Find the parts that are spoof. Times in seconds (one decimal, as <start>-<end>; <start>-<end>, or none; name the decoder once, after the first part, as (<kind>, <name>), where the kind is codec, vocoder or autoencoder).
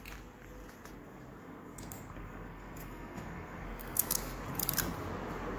1.0-4.4 (codec, SNAC)